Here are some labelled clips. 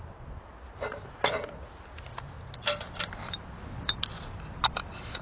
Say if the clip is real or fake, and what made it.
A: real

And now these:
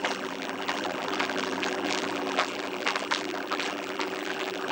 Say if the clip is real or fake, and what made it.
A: fake, vocoder, BigVGAN v2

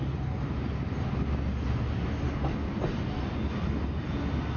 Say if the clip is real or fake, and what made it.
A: real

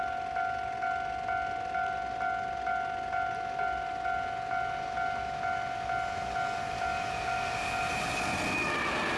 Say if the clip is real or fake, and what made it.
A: real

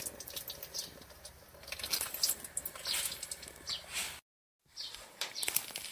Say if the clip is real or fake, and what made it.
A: real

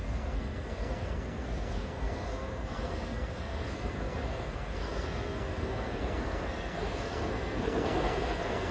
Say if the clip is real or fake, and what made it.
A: fake, codec, SNAC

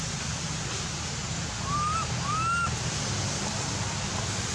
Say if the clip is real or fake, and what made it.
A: real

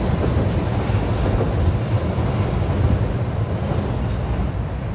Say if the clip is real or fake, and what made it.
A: real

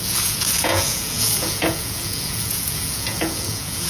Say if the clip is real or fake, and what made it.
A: fake, vocoder, Vocos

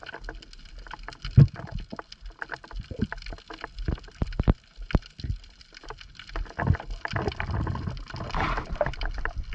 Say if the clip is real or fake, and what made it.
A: real